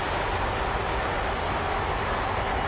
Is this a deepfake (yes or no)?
no